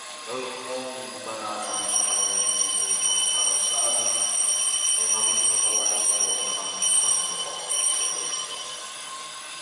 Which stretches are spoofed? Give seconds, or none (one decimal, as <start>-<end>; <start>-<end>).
0.0-2.8; 5.7-6.4; 7.6-9.6